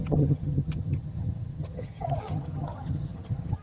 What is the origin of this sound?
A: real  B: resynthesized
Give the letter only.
B